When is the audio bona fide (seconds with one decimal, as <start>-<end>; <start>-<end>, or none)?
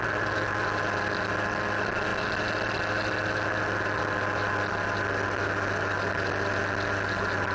0.0-7.5